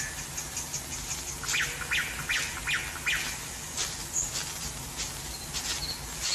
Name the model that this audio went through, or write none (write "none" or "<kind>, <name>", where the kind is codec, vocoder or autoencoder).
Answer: none